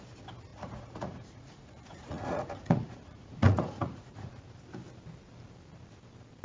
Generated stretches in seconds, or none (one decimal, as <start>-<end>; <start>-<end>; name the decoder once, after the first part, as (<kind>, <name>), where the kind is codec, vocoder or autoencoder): 0.5-4.3 (vocoder, Vocos)